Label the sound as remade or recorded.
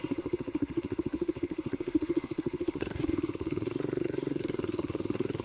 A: remade